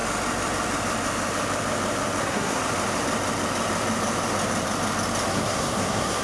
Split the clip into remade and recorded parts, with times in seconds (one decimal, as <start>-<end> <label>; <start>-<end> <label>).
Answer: 0.0-2.2 recorded; 2.2-2.6 remade; 2.6-5.3 recorded; 5.3-6.2 remade